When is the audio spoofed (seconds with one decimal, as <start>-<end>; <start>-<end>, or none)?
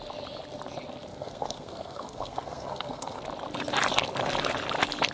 1.1-3.2